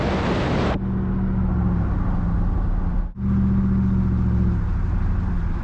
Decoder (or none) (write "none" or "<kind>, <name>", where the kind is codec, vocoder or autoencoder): none